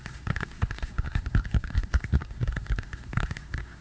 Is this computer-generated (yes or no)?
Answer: yes